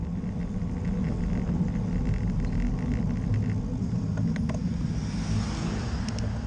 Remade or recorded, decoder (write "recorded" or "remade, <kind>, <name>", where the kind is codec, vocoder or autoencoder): recorded